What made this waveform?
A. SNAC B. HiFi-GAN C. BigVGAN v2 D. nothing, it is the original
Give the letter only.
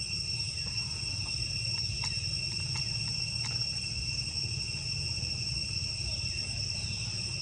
D